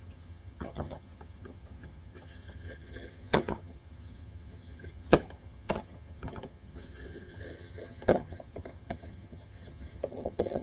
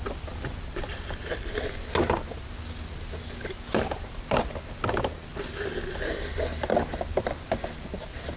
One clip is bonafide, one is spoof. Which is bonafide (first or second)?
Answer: second